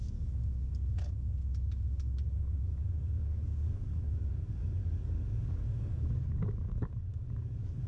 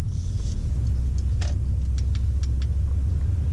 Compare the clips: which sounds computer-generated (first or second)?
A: first